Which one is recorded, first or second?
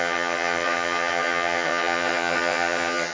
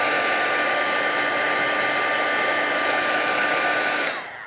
second